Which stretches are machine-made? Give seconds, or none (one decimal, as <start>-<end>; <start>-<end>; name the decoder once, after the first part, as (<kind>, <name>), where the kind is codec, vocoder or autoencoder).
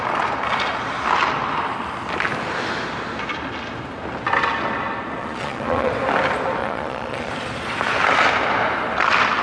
5.2-5.9 (vocoder, Vocos); 6.6-7.3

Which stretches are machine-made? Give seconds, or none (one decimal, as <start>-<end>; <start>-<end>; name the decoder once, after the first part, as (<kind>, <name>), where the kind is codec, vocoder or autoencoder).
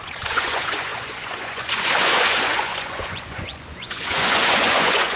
0.0-5.2 (vocoder, Vocos)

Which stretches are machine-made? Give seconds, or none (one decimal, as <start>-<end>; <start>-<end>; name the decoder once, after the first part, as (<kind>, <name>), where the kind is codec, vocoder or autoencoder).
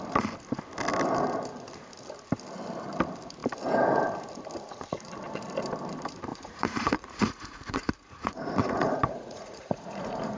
6.3-10.4 (vocoder, Vocos)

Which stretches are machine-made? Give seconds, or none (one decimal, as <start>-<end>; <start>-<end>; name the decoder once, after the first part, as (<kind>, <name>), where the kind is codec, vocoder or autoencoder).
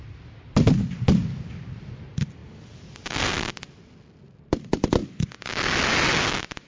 none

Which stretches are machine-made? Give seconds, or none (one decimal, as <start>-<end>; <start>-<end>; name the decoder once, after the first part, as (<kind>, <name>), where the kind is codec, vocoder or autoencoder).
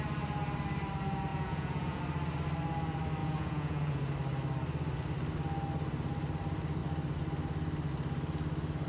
1.3-2.0 (vocoder, Vocos); 3.2-4.0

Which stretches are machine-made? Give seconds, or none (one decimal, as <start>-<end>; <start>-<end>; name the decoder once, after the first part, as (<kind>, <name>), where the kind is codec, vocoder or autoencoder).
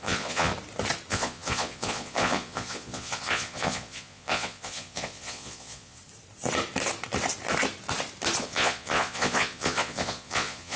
0.0-0.5 (vocoder, Vocos); 1.1-6.0; 8.4-10.8